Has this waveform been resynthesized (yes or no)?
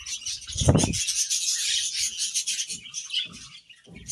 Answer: no